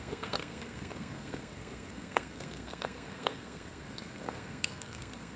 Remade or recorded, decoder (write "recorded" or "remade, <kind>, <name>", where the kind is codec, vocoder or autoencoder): remade, codec, SNAC